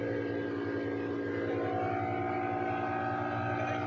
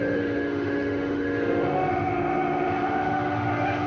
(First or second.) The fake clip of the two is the second